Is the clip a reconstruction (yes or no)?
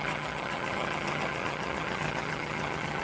yes